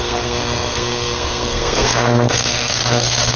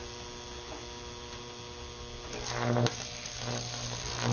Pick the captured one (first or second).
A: second